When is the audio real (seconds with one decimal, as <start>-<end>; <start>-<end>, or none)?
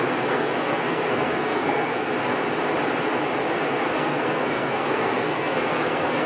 2.1-3.5